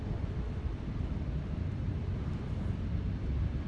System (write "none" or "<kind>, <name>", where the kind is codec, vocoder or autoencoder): none